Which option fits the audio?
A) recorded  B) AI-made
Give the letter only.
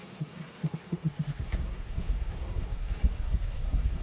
B